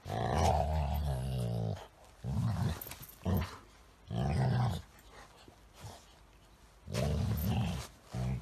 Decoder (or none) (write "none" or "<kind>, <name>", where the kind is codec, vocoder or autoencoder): none